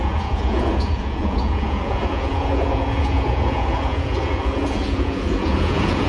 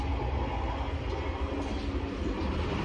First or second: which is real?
second